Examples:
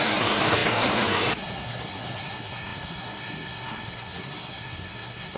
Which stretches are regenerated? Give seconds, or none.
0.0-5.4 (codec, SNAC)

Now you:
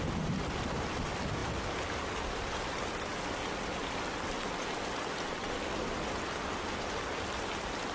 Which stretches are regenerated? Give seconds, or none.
none

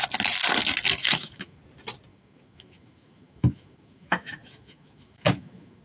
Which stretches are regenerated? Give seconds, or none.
1.0-1.6 (autoencoder, DAC-VAE); 2.1-5.8

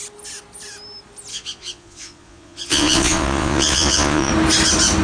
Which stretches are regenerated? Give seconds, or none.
1.3-4.3 (vocoder, Vocos)

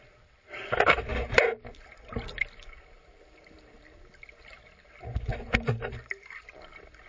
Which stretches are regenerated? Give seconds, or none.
5.3-6.4 (vocoder, BigVGAN v2)

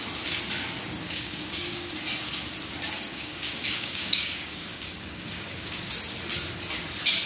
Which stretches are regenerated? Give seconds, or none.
1.0-1.9 (codec, DAC); 3.1-5.9